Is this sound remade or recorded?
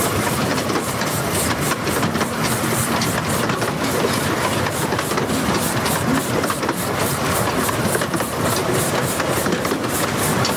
remade